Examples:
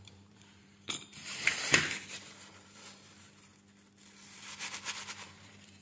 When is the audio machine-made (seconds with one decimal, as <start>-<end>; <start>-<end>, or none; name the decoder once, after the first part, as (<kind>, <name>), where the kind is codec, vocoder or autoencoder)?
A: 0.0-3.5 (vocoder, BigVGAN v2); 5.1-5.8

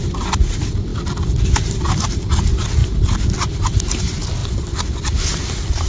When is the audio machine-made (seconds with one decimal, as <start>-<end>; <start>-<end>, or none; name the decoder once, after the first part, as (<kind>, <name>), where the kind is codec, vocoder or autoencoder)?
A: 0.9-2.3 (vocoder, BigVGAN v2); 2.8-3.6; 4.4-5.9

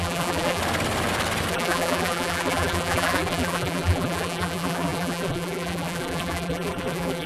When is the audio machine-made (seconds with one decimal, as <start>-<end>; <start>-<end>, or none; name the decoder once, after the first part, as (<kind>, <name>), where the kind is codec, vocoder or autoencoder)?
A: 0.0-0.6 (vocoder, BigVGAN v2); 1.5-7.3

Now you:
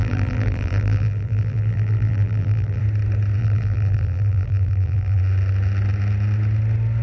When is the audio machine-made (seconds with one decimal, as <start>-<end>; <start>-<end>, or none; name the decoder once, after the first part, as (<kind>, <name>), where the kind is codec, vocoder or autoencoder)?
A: 0.0-2.8 (vocoder, BigVGAN v2); 3.4-5.2

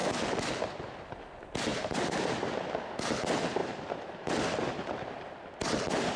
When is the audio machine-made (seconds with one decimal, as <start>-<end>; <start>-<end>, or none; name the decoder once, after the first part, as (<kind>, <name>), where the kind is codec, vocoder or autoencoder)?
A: 0.0-0.5 (vocoder, BigVGAN v2); 1.7-2.8; 3.6-4.3

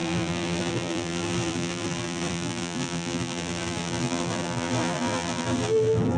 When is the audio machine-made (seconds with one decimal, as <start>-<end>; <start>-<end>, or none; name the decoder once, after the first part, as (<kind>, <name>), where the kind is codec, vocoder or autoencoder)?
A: 0.0-6.2 (vocoder, BigVGAN v2)